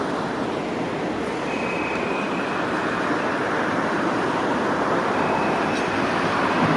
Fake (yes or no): no